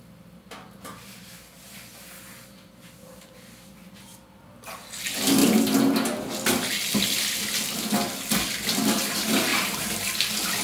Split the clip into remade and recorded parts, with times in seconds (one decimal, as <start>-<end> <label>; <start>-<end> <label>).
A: 0.0-5.4 recorded; 5.4-6.3 remade; 6.3-9.5 recorded; 9.5-10.1 remade; 10.1-10.6 recorded